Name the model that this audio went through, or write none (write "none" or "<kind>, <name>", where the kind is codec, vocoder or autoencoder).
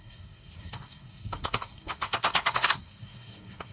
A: codec, SNAC